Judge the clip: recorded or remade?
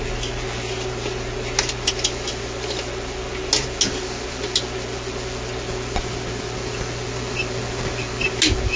recorded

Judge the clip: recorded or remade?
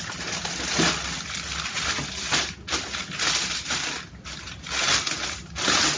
recorded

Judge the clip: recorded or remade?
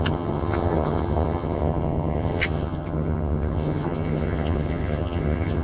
remade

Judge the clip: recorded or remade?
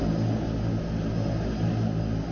recorded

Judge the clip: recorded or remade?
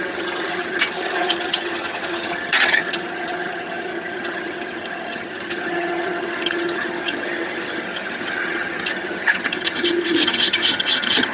remade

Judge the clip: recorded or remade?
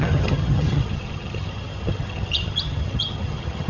remade